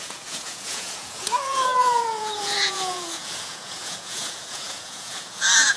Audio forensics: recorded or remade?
remade